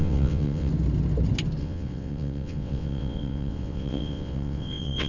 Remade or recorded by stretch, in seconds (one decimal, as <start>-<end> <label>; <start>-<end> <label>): 0.0-0.7 remade; 0.7-1.6 recorded; 1.6-5.1 remade